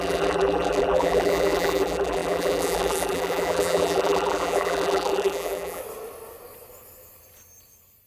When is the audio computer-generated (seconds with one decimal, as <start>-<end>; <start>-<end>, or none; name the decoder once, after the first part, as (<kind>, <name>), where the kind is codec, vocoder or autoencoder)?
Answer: 0.0-5.8 (vocoder, BigVGAN v2)